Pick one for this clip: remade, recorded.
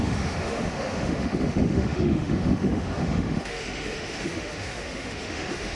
remade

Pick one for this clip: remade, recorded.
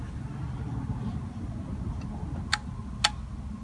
recorded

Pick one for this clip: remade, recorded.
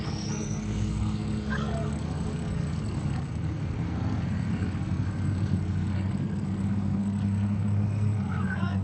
remade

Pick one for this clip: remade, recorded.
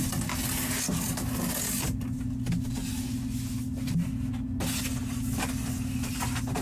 recorded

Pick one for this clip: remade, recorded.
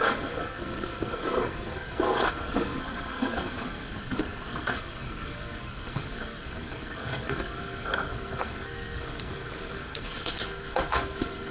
remade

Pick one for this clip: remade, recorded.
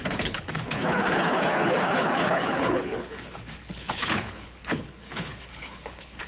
remade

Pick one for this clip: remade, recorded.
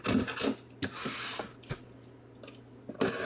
recorded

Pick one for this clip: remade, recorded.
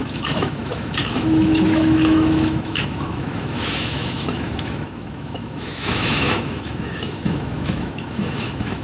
remade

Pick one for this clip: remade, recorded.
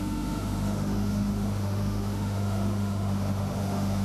remade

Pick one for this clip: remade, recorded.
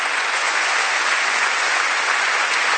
remade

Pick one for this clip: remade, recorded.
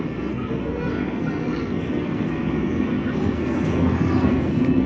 remade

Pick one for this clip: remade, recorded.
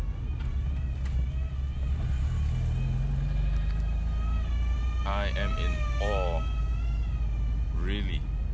recorded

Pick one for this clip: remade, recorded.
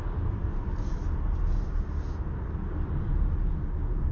recorded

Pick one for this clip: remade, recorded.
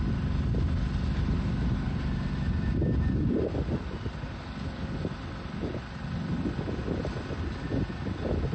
recorded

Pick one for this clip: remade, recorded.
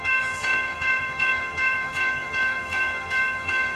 remade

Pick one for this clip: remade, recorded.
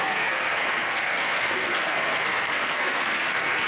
remade